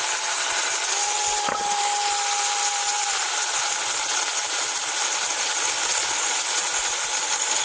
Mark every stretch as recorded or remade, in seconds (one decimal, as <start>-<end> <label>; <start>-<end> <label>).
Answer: 0.0-7.6 recorded